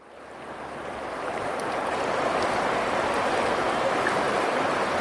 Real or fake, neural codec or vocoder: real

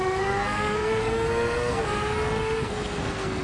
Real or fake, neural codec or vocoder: fake, codec, SNAC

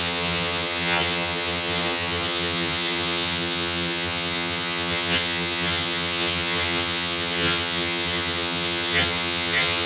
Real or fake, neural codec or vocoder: fake, vocoder, HiFi-GAN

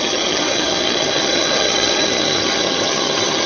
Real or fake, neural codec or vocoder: fake, vocoder, HiFi-GAN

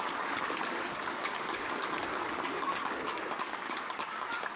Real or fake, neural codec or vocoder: fake, codec, DAC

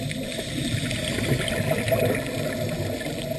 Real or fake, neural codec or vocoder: real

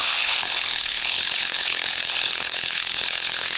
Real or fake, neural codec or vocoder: fake, codec, HILCodec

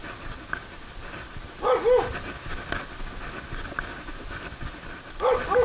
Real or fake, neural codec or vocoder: real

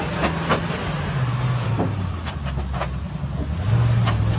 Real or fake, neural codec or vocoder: real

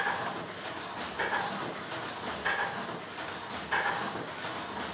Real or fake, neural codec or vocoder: real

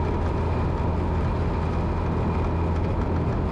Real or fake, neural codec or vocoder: real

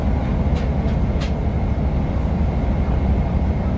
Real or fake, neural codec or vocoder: real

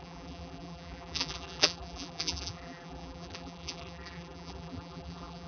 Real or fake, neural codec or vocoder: fake, vocoder, BigVGAN v2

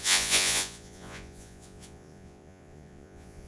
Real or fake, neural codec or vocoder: fake, vocoder, Vocos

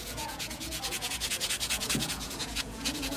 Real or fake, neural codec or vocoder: fake, vocoder, Vocos